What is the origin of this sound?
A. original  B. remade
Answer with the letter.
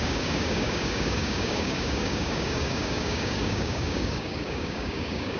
B